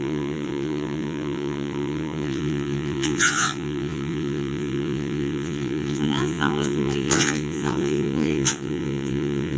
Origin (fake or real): fake